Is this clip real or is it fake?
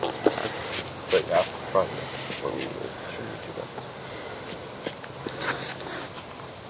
real